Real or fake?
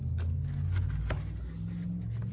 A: real